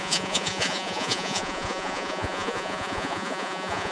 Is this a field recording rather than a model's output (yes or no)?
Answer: no